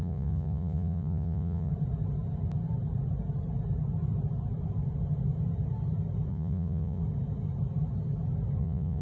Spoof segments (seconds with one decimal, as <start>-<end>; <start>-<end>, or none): 0.0-1.7; 6.3-7.0; 8.6-9.0